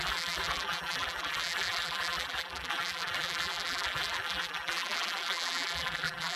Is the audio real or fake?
fake